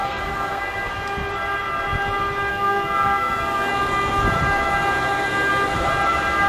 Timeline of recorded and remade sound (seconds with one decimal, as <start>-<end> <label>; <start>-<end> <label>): 0.0-0.9 remade; 0.9-2.5 recorded; 2.5-3.7 remade; 3.7-6.5 recorded

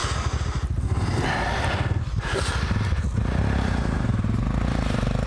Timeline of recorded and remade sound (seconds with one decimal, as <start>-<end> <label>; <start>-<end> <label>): 0.0-5.3 recorded